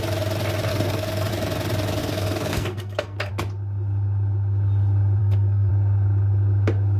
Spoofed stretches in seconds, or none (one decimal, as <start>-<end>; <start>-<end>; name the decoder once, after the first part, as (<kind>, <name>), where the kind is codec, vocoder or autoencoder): 0.7-1.3 (codec, SNAC); 2.0-3.3; 5.2-5.7